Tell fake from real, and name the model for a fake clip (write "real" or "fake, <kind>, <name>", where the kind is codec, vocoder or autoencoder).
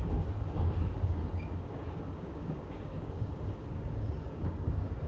fake, codec, DAC